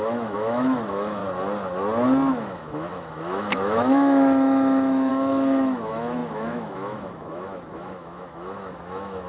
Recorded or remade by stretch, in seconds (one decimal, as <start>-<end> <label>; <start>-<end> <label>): 0.0-1.2 remade; 1.2-2.3 recorded; 2.3-9.3 remade